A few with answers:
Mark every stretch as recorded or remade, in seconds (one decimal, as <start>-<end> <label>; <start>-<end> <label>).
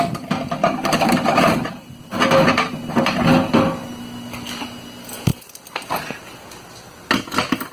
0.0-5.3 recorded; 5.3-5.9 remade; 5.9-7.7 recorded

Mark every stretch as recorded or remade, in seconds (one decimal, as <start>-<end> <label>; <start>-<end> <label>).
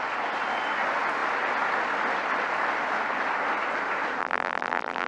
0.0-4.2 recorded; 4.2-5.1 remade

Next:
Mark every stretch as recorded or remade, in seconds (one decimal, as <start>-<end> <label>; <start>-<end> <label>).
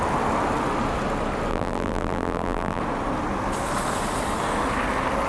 0.0-1.5 recorded; 1.5-2.8 remade; 2.8-5.3 recorded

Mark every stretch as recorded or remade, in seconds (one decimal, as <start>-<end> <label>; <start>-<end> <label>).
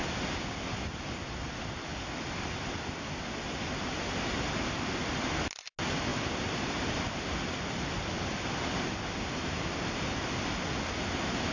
0.0-6.1 recorded; 6.1-7.1 remade; 7.1-11.5 recorded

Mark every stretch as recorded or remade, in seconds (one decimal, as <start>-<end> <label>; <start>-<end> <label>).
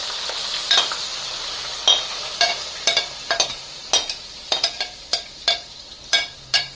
0.0-0.4 remade; 0.4-2.1 recorded; 2.1-3.8 remade; 3.8-4.4 recorded; 4.4-6.7 remade